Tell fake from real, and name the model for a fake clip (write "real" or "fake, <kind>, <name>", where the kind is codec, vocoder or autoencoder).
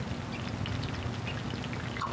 real